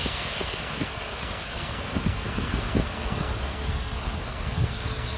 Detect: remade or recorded remade